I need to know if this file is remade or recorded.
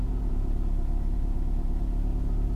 remade